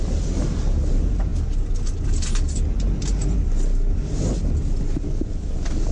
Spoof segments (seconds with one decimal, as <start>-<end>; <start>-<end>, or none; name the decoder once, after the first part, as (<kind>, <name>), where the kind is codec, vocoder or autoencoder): none